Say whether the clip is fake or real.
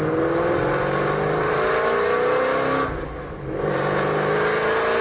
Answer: real